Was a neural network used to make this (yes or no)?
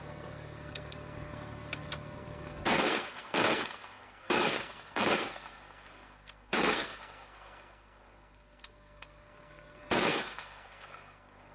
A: yes